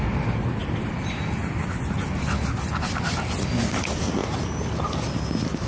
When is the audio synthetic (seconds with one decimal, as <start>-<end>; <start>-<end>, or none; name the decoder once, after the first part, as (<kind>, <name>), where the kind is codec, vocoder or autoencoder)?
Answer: none